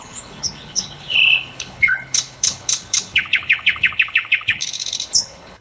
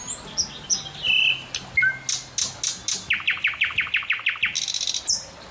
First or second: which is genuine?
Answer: second